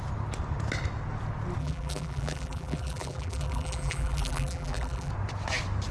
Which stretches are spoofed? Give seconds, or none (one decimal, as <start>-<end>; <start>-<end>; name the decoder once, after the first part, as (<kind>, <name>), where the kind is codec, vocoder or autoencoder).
1.6-5.1 (vocoder, BigVGAN v2)